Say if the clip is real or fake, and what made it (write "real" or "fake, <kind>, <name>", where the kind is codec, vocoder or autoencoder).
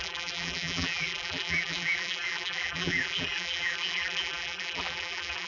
fake, vocoder, BigVGAN v2